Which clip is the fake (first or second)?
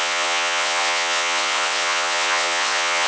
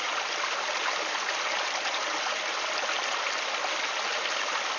first